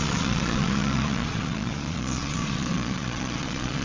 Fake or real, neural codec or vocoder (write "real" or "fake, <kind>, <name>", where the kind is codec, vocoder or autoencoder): fake, vocoder, Vocos